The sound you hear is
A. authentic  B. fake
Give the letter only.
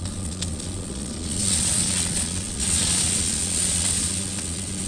B